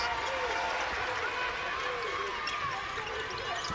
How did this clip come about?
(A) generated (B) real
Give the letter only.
B